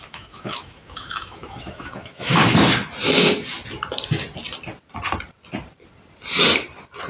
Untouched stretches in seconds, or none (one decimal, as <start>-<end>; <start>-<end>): 2.4-7.1